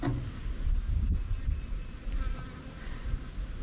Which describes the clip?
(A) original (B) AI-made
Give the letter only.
A